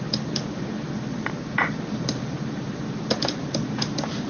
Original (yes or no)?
yes